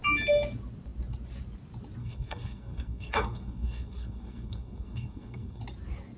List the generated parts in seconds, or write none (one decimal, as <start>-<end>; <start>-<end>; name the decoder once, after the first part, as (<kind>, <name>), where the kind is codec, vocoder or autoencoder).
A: 2.0-5.6 (codec, SNAC)

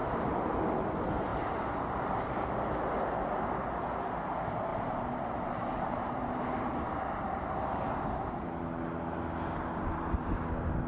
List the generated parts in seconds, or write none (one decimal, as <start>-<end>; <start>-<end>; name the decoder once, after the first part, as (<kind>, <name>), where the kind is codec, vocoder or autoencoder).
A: 0.0-0.6 (vocoder, BigVGAN v2); 4.7-8.4

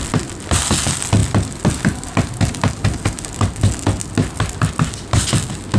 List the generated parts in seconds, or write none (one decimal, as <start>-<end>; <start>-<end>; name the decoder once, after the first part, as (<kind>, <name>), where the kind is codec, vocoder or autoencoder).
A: none